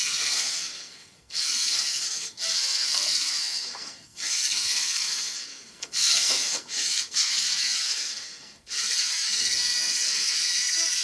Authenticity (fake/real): fake